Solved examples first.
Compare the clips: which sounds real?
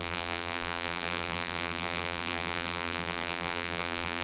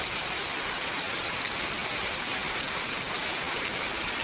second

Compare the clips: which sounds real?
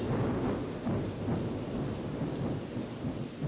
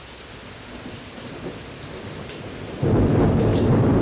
first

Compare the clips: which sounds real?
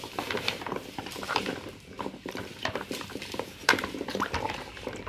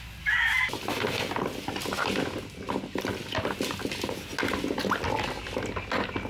second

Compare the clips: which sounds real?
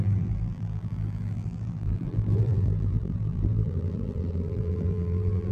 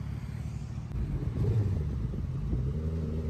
second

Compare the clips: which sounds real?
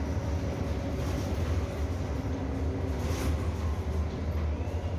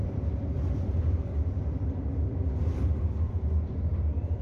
first